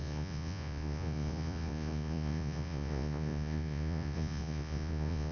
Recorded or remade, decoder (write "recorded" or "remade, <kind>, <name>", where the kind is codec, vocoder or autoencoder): remade, vocoder, Vocos